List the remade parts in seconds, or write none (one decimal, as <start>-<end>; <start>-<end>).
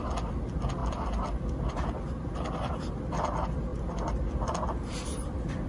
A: 0.8-3.0; 3.7-5.7